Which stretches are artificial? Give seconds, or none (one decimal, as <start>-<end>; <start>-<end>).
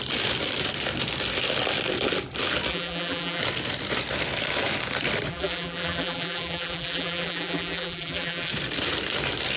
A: 2.7-3.4; 5.3-8.5